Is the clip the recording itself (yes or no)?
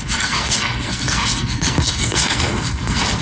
no